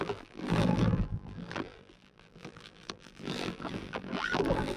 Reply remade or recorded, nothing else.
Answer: remade